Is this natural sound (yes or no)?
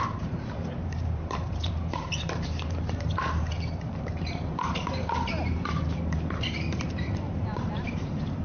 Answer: no